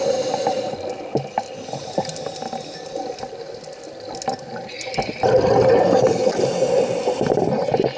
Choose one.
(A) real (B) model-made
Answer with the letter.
A